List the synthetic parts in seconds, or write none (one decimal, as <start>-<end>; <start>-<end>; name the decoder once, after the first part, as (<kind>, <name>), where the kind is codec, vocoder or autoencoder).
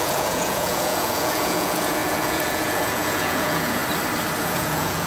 0.0-3.8 (vocoder, Vocos); 4.4-5.1